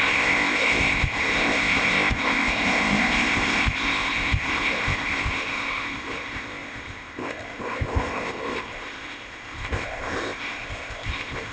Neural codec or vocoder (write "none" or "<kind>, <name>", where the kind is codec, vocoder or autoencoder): codec, ZipCodec